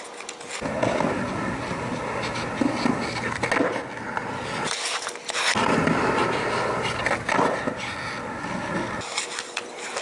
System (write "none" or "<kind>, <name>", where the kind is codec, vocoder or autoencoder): none